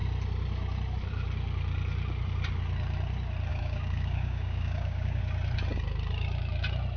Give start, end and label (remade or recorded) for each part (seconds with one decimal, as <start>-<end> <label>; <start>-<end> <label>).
0.0-3.5 recorded; 3.5-5.2 remade; 5.2-7.0 recorded